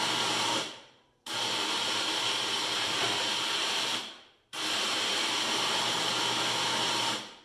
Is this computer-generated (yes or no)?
yes